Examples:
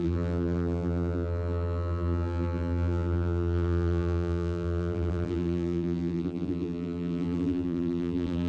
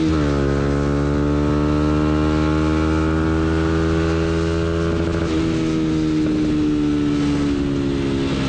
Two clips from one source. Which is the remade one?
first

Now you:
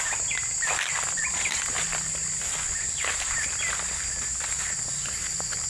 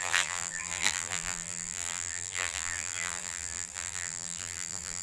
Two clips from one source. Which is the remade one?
second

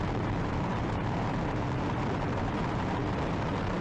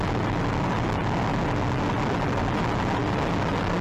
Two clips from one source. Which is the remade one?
first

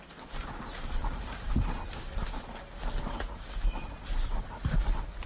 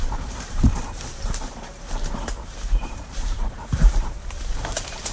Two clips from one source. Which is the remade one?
second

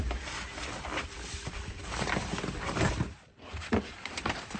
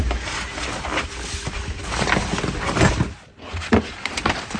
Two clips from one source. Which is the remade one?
first